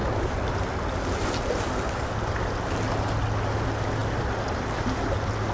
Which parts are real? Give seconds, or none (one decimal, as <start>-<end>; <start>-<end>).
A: 0.0-5.5